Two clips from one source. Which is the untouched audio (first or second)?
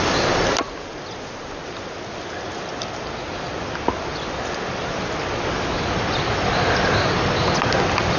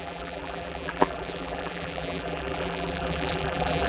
first